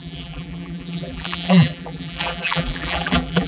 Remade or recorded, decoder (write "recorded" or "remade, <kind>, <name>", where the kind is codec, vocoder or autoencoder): remade, vocoder, BigVGAN v2